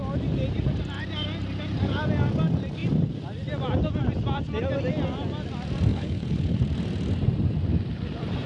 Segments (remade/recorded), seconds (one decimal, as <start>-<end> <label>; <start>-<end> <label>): 0.0-5.9 recorded; 5.9-6.6 remade; 6.6-8.5 recorded